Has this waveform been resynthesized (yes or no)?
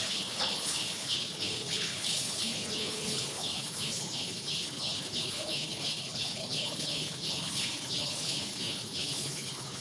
yes